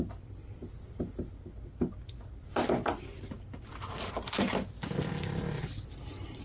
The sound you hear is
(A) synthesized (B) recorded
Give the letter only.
B